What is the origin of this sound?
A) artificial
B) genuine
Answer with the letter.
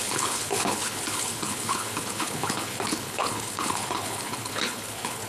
A